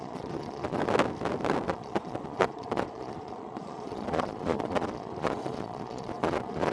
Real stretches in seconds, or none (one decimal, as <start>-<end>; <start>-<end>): 0.8-1.7